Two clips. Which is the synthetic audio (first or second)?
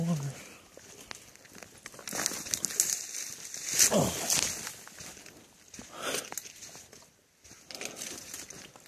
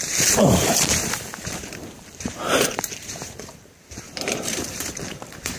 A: second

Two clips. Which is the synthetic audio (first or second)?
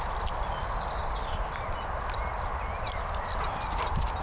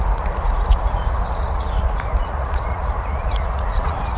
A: second